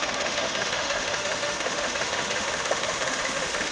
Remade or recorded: remade